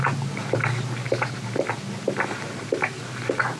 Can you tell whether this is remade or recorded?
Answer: recorded